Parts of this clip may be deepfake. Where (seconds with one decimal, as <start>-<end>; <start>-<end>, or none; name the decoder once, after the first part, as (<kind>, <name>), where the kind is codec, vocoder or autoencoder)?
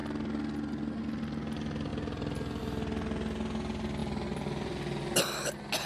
none